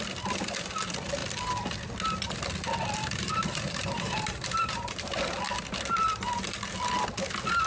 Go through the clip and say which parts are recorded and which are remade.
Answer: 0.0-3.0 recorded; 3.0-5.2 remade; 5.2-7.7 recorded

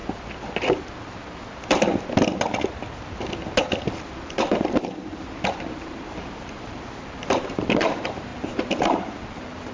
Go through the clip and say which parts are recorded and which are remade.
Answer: 0.0-3.6 recorded; 3.6-9.7 remade

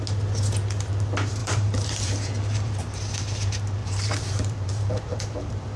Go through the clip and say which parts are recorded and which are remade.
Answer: 0.0-1.4 recorded; 1.4-2.8 remade; 2.8-3.8 recorded; 3.8-5.8 remade